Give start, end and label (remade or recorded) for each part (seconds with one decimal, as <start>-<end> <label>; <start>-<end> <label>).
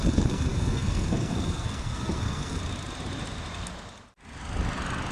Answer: 0.0-2.6 remade; 2.6-5.1 recorded